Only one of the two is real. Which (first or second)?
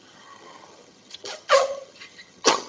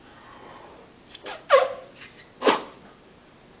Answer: second